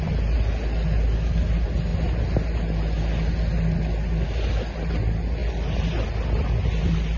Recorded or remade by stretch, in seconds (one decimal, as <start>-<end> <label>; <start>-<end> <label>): 0.0-7.2 recorded